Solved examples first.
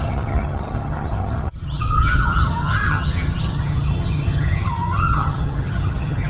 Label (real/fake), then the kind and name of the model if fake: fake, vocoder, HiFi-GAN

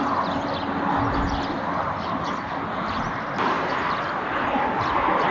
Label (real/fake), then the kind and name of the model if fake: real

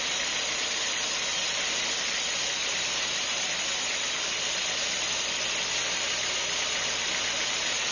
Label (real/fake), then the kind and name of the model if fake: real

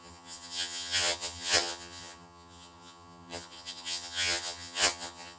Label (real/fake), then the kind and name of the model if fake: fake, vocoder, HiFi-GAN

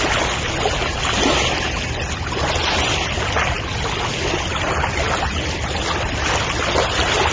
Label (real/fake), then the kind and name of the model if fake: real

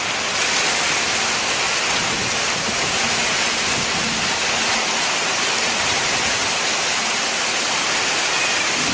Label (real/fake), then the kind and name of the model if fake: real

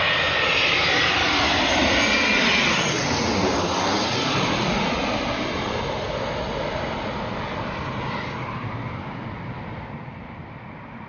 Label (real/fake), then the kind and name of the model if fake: real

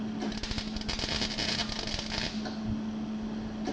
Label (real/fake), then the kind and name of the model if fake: real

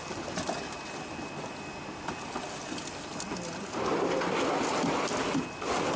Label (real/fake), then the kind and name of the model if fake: real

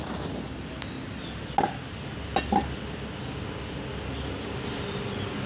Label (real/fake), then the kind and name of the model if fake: real